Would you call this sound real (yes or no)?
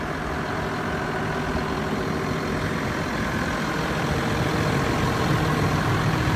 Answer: yes